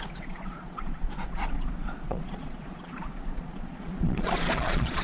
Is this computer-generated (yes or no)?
yes